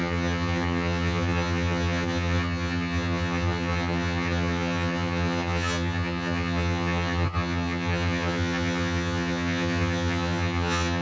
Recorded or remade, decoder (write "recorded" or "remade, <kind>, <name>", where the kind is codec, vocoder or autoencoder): remade, vocoder, HiFi-GAN